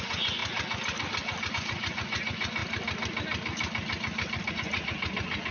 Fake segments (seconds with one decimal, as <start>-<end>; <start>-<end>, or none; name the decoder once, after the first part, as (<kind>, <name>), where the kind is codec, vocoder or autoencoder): 0.0-0.4 (vocoder, Vocos); 1.5-2.6; 4.5-5.5